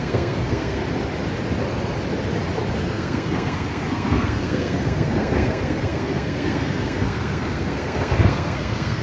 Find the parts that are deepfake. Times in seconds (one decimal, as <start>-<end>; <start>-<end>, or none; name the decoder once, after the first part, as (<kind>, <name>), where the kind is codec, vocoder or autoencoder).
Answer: 0.0-0.8 (codec, SNAC); 2.7-9.0